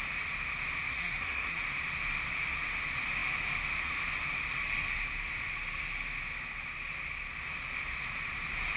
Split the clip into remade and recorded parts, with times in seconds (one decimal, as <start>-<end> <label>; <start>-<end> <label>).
0.0-0.9 recorded; 0.9-1.6 remade; 1.6-8.8 recorded